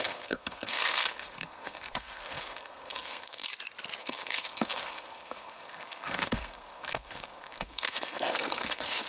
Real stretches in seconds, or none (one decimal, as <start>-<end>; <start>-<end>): 3.5-4.0